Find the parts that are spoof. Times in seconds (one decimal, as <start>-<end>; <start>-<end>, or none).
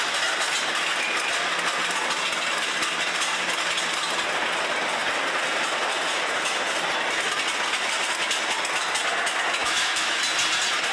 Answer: 9.6-10.2